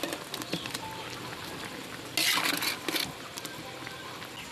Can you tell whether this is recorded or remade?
recorded